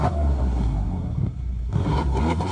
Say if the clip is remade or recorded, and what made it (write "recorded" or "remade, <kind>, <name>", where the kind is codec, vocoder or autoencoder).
remade, codec, SNAC